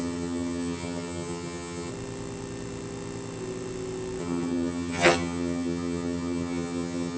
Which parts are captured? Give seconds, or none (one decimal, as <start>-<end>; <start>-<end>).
1.9-4.2